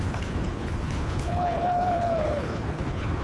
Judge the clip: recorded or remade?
remade